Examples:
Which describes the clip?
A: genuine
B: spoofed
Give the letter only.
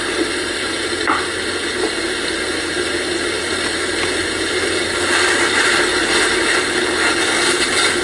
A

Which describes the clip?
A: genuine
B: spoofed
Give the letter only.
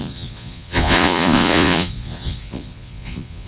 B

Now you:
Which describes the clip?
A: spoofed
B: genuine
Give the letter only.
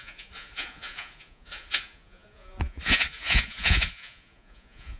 A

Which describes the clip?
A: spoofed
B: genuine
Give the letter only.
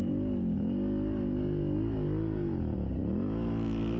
B